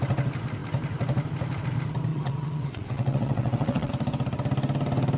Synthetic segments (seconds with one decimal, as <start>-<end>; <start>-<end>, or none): 2.1-3.9